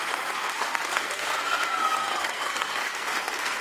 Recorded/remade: remade